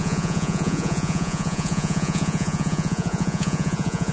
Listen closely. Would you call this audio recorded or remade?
remade